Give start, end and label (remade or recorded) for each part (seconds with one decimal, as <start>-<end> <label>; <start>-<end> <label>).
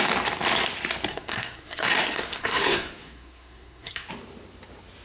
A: 0.0-1.1 recorded; 1.1-4.1 remade; 4.1-5.0 recorded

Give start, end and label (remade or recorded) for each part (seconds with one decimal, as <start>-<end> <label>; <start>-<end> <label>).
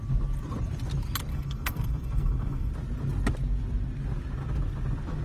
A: 0.0-1.3 recorded; 1.3-2.7 remade; 2.7-5.2 recorded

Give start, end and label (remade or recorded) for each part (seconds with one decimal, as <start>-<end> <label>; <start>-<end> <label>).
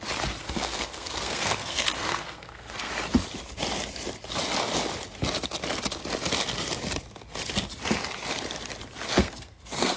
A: 0.0-0.4 recorded; 0.4-2.9 remade; 2.9-9.1 recorded; 9.1-10.0 remade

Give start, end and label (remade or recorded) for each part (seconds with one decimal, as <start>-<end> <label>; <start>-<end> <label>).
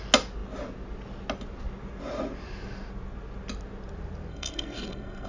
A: 0.0-4.3 recorded; 4.3-5.3 remade